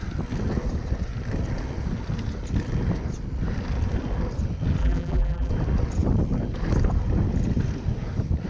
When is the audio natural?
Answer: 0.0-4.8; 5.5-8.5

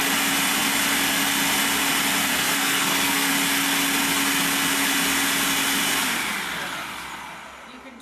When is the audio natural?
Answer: 0.0-2.2; 3.3-8.0

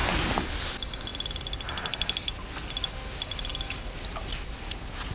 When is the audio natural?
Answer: 0.0-5.1

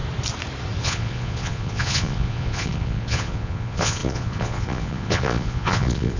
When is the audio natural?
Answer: 0.0-0.8

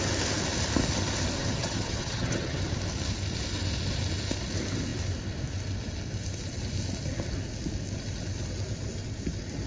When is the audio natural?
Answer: 0.0-1.4; 2.6-9.7

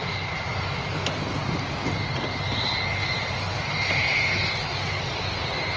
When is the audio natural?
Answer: 0.0-5.8

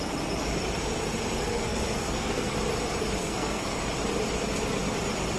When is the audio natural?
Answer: 0.0-1.4; 2.5-3.2; 3.8-5.4